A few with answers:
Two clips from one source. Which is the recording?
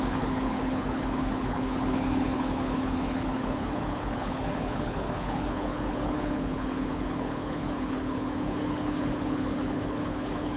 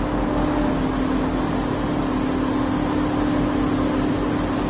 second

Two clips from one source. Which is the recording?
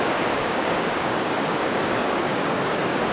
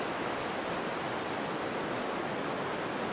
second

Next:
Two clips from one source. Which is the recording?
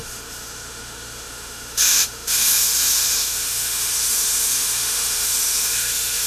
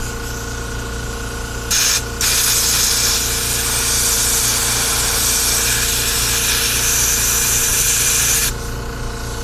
second